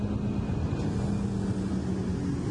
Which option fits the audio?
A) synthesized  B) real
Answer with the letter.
B